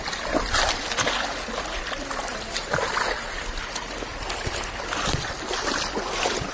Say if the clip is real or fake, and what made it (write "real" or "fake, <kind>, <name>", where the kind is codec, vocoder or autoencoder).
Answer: real